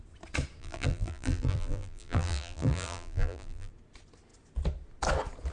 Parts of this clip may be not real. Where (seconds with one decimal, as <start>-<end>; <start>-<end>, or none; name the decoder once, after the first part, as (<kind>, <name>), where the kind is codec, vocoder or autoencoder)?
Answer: 0.6-3.7 (vocoder, BigVGAN v2)